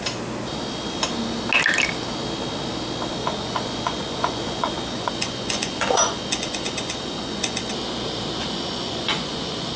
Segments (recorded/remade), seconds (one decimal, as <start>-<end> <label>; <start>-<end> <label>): 0.0-3.2 recorded; 3.2-7.7 remade; 7.7-8.4 recorded; 8.4-9.8 remade

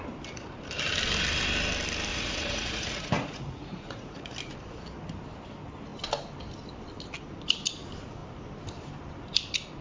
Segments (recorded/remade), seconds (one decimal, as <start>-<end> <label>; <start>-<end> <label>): 0.0-2.1 recorded; 2.1-4.3 remade; 4.3-9.8 recorded

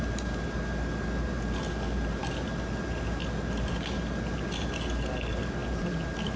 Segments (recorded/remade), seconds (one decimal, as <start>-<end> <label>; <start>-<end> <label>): 0.0-6.4 recorded

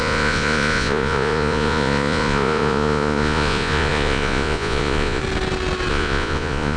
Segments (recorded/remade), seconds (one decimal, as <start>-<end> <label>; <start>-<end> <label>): 0.0-5.2 remade; 5.2-5.9 recorded; 5.9-6.8 remade

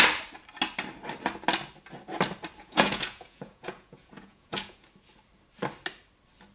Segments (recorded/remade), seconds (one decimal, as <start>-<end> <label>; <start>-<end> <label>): 0.0-2.6 recorded; 2.6-4.9 remade; 4.9-6.5 recorded

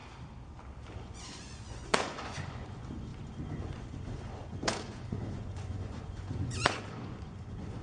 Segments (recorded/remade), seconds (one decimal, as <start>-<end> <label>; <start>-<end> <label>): 0.0-1.0 recorded; 1.0-7.8 remade

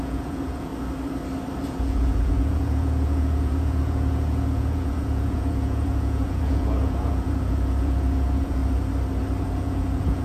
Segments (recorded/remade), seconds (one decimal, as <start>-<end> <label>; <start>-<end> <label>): 0.0-0.7 remade; 0.7-1.6 recorded; 1.6-8.6 remade; 8.6-9.4 recorded; 9.4-10.2 remade